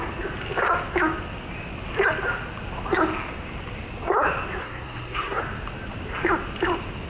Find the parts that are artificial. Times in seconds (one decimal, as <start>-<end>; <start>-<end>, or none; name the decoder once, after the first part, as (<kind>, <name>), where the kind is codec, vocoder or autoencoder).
4.6-5.4 (codec, SNAC)